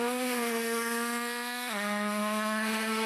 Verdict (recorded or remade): remade